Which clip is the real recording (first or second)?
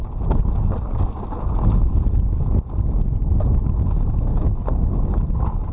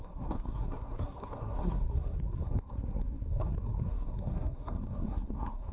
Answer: first